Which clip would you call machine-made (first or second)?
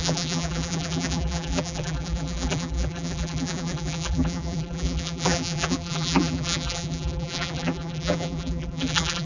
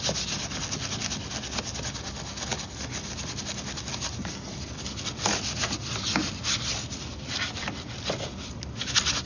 first